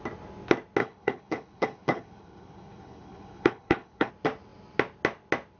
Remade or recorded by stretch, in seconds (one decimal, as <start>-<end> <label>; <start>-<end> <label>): 0.0-0.8 recorded; 0.8-4.1 remade; 4.1-5.6 recorded